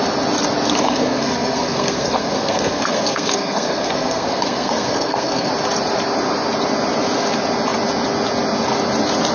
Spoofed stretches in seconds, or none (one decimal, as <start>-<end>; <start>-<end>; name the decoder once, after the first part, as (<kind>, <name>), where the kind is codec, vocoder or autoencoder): 0.8-5.5 (codec, SNAC)